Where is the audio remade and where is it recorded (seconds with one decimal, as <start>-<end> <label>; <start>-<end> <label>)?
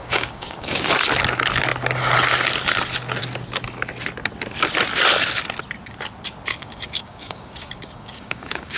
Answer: 0.0-0.9 remade; 0.9-6.5 recorded; 6.5-8.8 remade